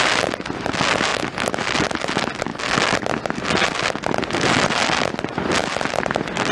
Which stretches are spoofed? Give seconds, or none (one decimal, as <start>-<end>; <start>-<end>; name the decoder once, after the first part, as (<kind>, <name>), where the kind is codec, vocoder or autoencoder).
none